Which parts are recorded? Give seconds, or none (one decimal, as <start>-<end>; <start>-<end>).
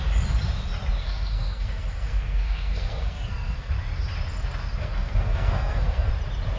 0.0-1.0; 3.7-4.8; 6.1-6.6